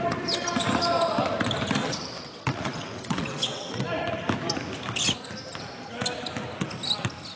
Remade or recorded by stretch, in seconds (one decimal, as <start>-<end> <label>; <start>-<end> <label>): 0.0-1.8 recorded; 1.8-3.8 remade; 3.8-7.4 recorded